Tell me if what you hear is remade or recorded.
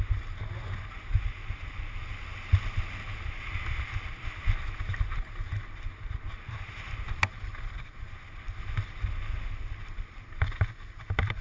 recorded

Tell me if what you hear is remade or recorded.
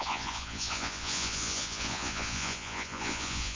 remade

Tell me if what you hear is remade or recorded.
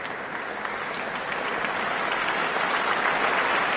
recorded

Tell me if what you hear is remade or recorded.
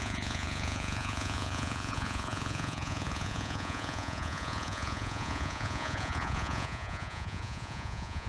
remade